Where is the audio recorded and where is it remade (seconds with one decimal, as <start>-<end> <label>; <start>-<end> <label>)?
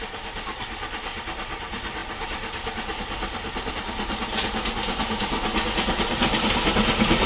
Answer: 0.0-7.3 recorded